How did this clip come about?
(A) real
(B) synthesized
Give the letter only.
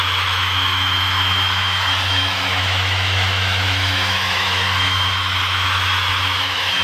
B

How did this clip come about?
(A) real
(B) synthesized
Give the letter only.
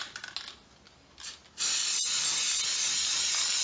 A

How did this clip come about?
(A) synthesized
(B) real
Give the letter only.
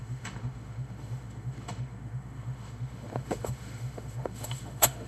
A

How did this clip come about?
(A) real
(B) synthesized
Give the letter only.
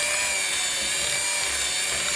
A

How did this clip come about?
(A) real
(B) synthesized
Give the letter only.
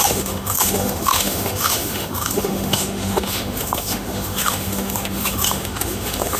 B